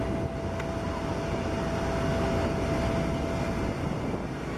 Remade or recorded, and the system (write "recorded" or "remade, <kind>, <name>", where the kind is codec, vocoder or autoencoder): recorded